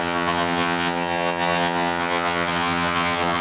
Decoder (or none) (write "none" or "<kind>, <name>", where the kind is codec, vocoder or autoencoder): vocoder, HiFi-GAN